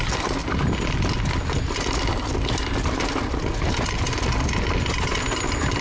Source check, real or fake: real